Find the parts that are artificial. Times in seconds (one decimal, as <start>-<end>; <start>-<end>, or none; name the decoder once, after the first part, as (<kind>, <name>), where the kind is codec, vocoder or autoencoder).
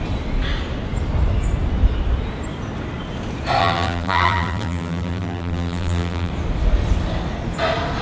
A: 3.6-6.3 (vocoder, BigVGAN v2)